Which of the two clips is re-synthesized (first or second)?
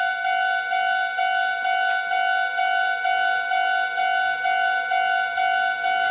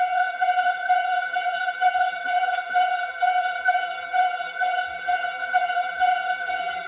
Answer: second